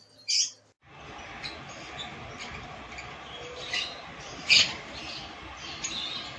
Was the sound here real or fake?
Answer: real